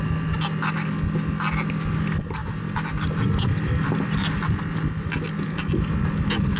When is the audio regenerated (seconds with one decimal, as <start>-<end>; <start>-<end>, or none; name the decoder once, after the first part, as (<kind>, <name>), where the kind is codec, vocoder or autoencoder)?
none